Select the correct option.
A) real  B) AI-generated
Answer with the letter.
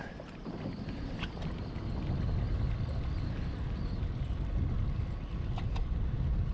A